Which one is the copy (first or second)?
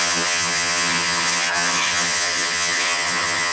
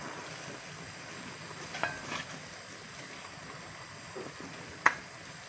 first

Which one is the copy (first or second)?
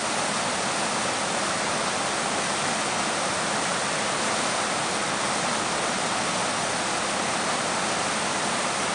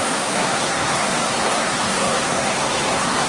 second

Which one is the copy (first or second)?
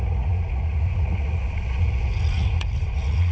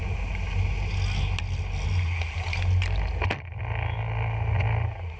first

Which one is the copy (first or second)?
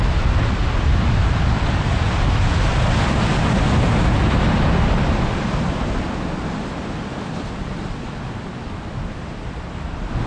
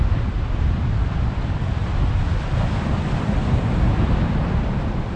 second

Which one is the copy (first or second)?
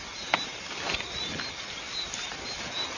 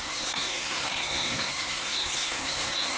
second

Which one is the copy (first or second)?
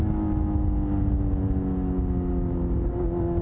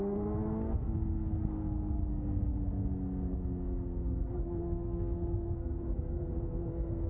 second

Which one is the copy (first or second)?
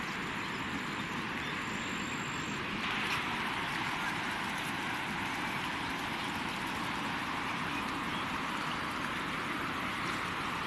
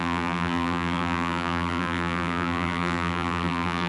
second